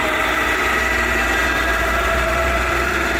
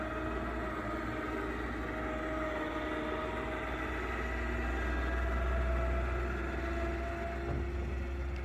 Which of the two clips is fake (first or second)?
first